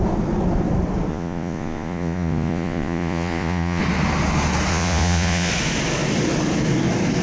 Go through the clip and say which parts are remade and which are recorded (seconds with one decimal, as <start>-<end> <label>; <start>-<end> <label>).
0.0-1.1 recorded; 1.1-3.8 remade; 3.8-4.7 recorded; 4.7-5.5 remade; 5.5-7.2 recorded